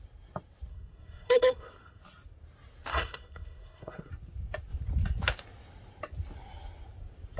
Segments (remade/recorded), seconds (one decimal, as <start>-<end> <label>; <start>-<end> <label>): 0.0-0.7 recorded; 0.7-2.0 remade; 2.0-2.9 recorded; 2.9-4.1 remade; 4.1-7.4 recorded